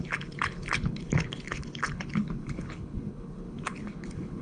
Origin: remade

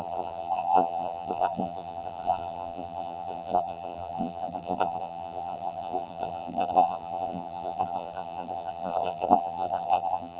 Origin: remade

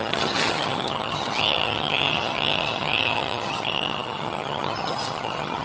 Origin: remade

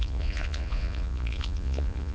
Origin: remade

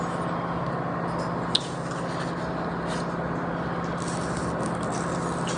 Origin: recorded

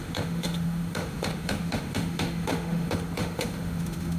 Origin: remade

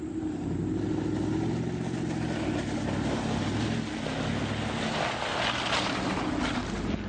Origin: recorded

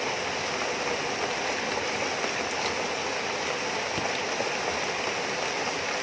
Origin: recorded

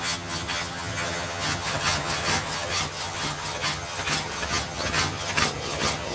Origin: remade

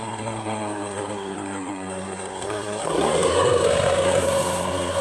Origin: remade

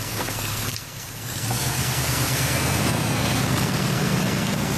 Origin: remade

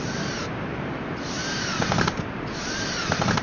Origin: remade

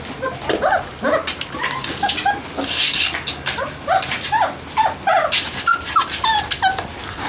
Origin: recorded